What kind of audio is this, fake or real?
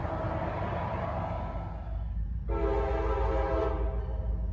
real